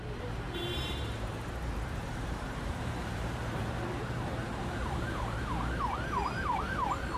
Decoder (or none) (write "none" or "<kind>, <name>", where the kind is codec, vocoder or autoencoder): vocoder, BigVGAN v2